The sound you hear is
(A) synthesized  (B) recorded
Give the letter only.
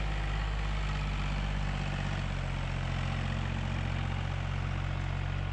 B